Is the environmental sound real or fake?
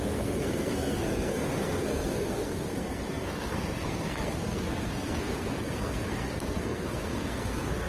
fake